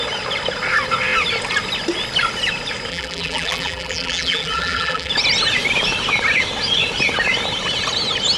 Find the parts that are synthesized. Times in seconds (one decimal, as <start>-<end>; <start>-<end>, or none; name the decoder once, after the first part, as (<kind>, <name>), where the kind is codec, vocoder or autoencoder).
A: 2.9-5.1 (vocoder, BigVGAN v2)

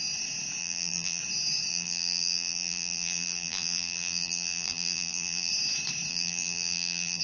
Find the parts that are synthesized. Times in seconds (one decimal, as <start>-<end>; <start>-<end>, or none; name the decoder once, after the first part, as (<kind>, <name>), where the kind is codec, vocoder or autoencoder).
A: 0.6-1.2 (vocoder, BigVGAN v2); 1.7-5.5; 6.1-7.2